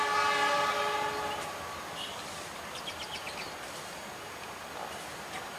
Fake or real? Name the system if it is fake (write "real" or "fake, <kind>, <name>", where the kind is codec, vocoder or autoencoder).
real